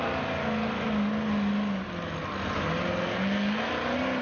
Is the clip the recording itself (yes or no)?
yes